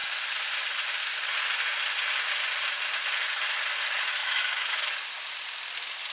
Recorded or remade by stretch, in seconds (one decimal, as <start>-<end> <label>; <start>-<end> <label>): 0.0-4.2 recorded; 4.2-4.8 remade; 4.8-6.1 recorded